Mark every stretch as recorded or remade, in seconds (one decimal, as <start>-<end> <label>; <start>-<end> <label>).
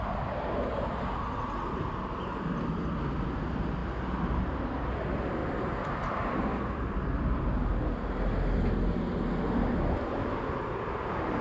0.0-5.4 recorded; 5.4-7.5 remade; 7.5-11.4 recorded